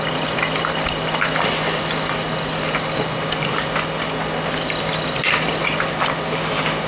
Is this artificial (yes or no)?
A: no